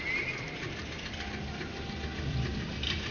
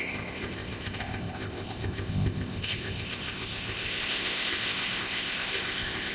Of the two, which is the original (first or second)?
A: first